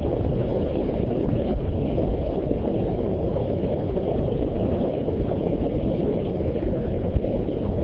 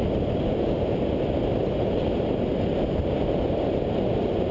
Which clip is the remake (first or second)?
first